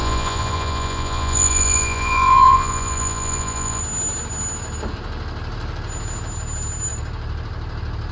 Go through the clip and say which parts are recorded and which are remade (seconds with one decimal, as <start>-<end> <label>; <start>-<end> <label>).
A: 0.0-3.8 remade; 3.8-8.1 recorded